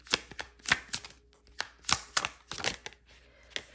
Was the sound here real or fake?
real